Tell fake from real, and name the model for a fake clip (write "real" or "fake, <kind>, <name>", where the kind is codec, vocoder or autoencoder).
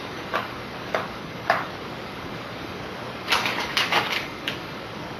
fake, codec, DAC